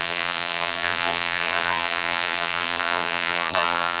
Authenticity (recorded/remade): remade